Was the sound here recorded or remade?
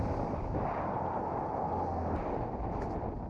recorded